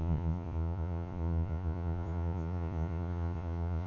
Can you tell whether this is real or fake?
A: fake